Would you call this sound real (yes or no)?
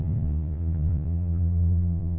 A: no